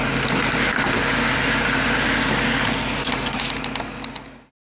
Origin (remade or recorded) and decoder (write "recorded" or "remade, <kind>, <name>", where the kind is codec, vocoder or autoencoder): recorded